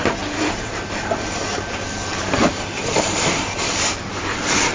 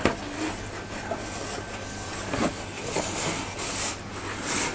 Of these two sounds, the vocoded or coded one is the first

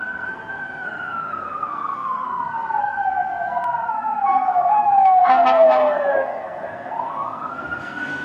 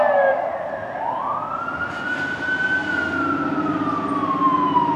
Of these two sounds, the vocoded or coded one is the first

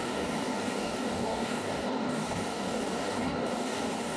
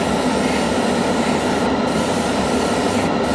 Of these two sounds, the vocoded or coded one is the first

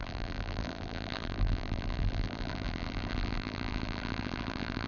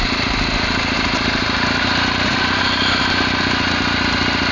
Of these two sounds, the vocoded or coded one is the first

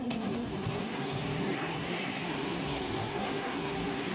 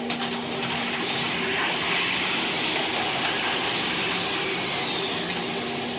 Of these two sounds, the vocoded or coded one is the first